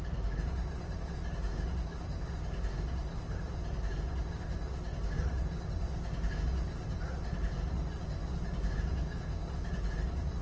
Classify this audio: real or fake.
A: real